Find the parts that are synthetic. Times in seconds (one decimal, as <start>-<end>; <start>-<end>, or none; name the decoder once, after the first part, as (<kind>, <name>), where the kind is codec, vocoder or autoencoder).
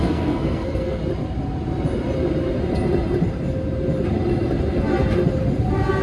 0.0-1.0 (codec, SNAC)